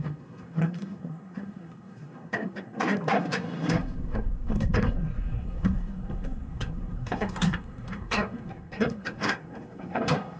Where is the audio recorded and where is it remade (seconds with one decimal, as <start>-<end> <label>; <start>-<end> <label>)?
0.0-10.4 remade